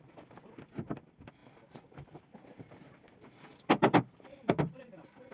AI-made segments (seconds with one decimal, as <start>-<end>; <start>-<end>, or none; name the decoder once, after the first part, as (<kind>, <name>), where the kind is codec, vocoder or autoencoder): none